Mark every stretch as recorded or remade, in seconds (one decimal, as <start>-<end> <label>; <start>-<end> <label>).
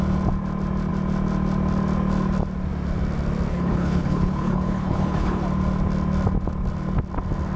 0.0-3.5 recorded; 3.5-5.4 remade; 5.4-7.6 recorded